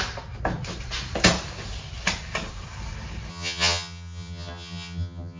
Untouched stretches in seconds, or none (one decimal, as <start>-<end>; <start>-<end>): 0.0-3.3